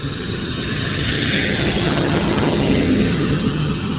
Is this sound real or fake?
fake